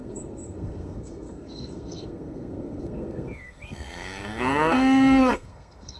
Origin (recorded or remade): remade